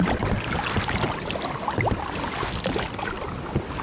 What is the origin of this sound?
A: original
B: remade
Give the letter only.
A